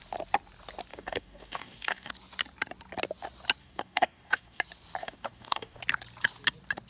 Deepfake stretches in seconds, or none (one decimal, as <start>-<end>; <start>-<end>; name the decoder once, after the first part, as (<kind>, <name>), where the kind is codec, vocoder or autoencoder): 0.9-2.1 (codec, DAC); 3.6-4.6; 5.0-5.8